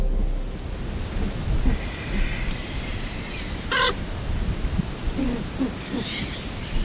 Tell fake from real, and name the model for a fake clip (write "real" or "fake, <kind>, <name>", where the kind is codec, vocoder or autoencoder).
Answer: real